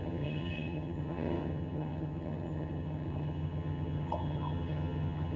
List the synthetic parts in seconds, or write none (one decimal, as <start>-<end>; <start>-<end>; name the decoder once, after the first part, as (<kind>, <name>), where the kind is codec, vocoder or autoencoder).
0.0-5.4 (vocoder, HiFi-GAN)